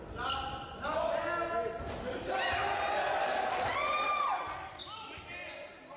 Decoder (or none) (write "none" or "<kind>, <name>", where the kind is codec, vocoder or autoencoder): none